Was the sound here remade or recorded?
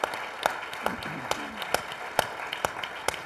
recorded